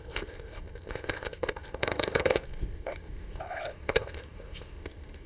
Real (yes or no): no